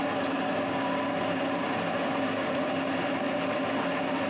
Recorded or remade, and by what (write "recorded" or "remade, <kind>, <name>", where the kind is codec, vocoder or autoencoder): recorded